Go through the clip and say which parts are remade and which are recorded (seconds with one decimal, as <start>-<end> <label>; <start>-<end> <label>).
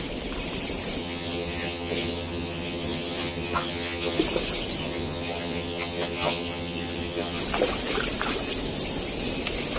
0.0-1.0 recorded; 1.0-4.2 remade; 4.2-4.8 recorded; 4.8-7.4 remade; 7.4-9.8 recorded